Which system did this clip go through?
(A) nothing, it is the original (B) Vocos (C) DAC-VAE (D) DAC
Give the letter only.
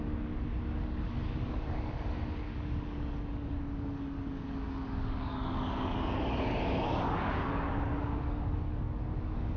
D